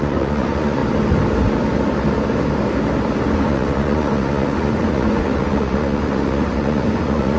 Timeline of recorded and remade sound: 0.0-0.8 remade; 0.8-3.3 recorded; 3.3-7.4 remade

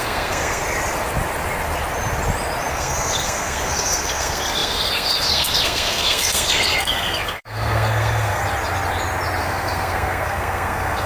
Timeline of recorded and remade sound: 0.0-0.6 remade; 0.6-2.7 recorded; 2.7-8.4 remade; 8.4-9.4 recorded; 9.4-11.1 remade

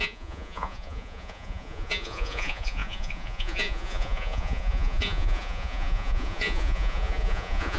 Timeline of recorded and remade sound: 0.0-7.8 remade

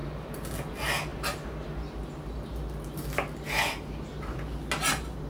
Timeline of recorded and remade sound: 0.0-5.3 recorded

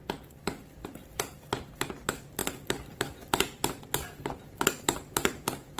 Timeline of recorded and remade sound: 0.0-5.8 remade